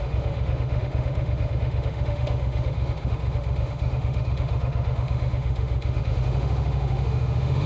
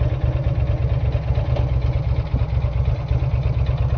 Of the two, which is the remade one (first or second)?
first